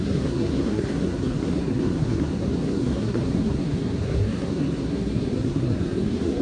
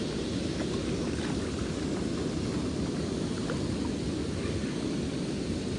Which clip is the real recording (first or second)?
second